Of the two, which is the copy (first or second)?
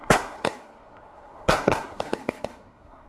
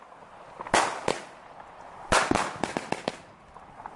first